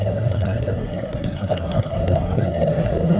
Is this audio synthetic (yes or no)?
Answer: yes